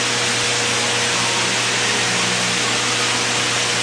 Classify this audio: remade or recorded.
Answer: recorded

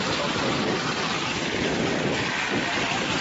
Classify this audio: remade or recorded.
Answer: recorded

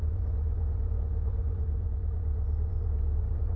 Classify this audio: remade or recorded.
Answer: remade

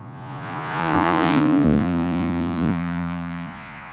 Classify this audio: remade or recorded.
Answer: remade